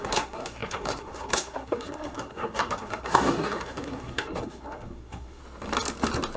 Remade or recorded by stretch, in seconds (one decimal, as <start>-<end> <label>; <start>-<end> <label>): 0.0-5.4 remade; 5.4-6.4 recorded